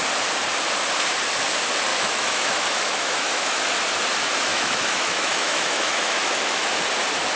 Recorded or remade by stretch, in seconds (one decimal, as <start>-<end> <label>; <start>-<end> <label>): 0.0-1.9 recorded; 1.9-3.6 remade; 3.6-4.5 recorded; 4.5-6.8 remade; 6.8-7.4 recorded